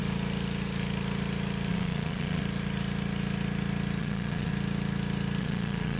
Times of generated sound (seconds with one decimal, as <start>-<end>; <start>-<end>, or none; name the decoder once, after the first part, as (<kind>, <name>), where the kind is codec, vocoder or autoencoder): 1.7-2.4 (vocoder, Vocos); 4.0-4.5; 5.4-6.0